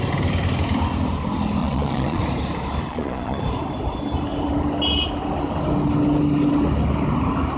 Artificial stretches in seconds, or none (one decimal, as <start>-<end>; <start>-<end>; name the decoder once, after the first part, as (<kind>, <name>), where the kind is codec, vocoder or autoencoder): 1.6-2.2 (vocoder, Vocos); 2.9-3.4